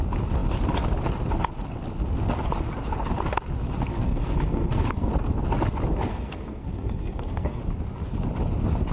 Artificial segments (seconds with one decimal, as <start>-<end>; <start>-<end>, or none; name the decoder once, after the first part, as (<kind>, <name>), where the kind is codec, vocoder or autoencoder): 3.9-5.1 (codec, SNAC); 6.1-7.6